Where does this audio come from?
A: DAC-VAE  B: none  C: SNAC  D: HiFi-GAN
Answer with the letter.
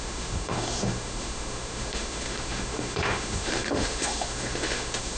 A